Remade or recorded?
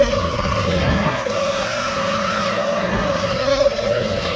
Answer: remade